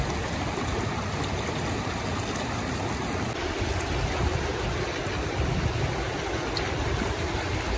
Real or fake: real